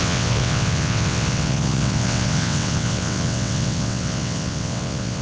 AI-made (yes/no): yes